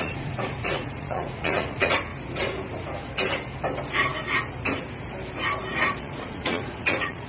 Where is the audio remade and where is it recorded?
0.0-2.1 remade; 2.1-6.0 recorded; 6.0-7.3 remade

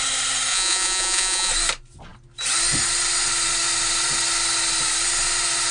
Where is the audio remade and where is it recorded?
0.0-0.5 recorded; 0.5-1.5 remade; 1.5-5.7 recorded